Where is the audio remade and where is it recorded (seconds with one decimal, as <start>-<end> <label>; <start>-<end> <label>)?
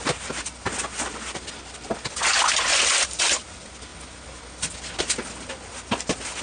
0.0-2.7 recorded; 2.7-3.2 remade; 3.2-6.4 recorded